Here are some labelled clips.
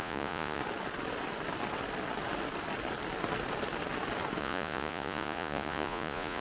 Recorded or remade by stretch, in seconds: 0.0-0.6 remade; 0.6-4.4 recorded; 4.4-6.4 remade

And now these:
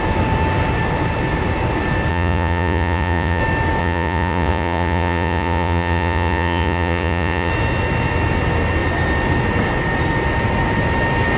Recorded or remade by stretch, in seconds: 0.0-2.1 recorded; 2.1-3.4 remade; 3.4-3.8 recorded; 3.8-7.5 remade; 7.5-11.4 recorded

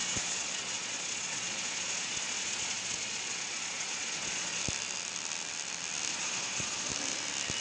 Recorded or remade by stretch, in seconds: 0.0-4.6 remade; 4.6-6.1 recorded; 6.1-6.9 remade; 6.9-7.6 recorded

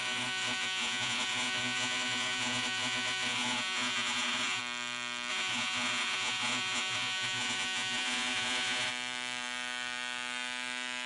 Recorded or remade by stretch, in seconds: 0.0-4.6 remade; 4.6-5.3 recorded; 5.3-8.9 remade; 8.9-11.1 recorded

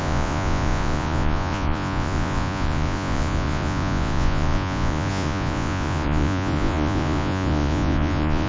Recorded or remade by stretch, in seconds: 0.0-8.5 remade

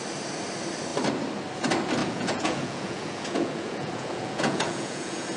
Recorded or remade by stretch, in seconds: 0.0-2.0 recorded; 2.0-5.4 remade

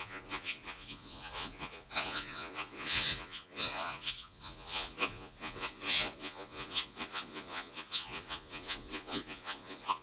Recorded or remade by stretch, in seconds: 0.0-10.0 remade

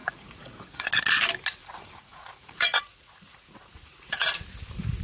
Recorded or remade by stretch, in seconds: 0.0-0.9 remade; 0.9-1.6 recorded; 1.6-4.3 remade; 4.3-5.0 recorded